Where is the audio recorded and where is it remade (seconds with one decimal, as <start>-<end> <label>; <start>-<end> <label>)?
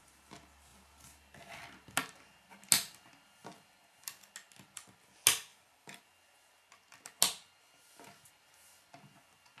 0.0-5.5 recorded; 5.5-6.0 remade; 6.0-9.6 recorded